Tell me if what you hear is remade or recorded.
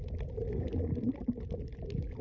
recorded